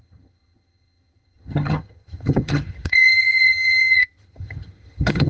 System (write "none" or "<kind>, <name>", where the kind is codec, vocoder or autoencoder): vocoder, HiFi-GAN